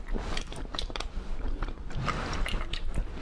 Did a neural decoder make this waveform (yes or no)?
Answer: yes